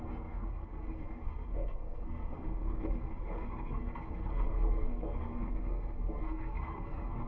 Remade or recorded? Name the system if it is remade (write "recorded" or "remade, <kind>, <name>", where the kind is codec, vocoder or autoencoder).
remade, codec, SNAC